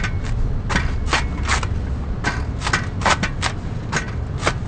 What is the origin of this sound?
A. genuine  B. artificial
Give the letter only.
A